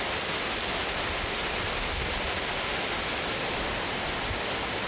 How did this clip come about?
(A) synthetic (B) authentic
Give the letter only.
B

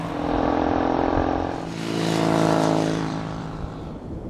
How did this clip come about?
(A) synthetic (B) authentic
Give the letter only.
A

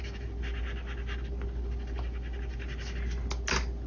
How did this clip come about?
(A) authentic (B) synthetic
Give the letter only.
A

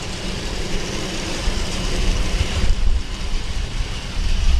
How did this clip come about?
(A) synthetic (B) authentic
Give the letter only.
A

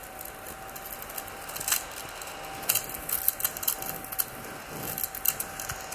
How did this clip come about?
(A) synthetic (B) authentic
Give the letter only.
B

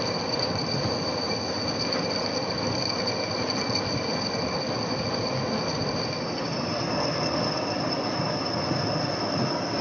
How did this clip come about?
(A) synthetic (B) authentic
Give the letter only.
B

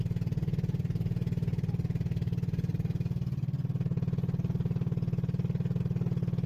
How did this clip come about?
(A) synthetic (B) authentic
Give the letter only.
B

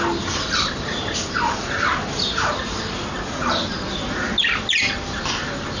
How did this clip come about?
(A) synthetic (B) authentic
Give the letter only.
B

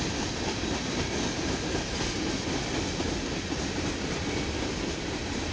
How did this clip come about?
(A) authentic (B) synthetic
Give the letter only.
A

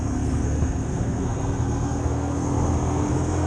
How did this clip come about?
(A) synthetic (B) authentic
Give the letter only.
A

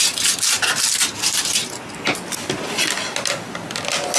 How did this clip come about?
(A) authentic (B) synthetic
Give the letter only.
A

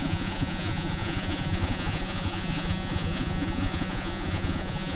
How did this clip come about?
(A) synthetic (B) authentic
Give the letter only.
A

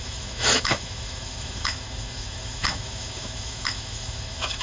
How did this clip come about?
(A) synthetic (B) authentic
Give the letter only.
A